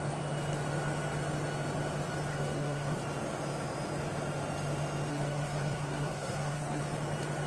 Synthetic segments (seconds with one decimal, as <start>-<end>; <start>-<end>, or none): 2.3-3.0; 5.1-6.8